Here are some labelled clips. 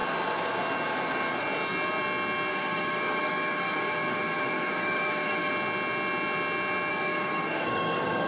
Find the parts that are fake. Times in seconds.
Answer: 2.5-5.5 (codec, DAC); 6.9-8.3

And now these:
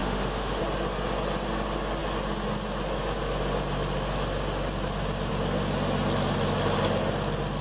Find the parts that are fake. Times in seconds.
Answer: 0.0-0.6 (autoencoder, DAC-VAE)

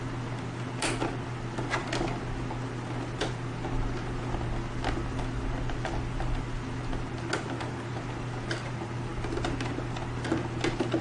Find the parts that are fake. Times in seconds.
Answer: none